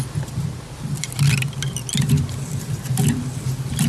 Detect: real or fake real